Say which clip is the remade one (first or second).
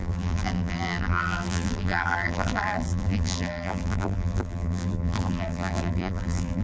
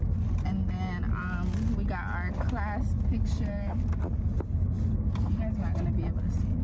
first